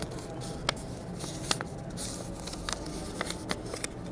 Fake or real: real